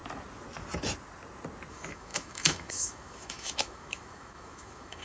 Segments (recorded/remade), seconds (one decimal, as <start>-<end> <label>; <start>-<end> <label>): 0.0-1.7 recorded; 1.7-5.0 remade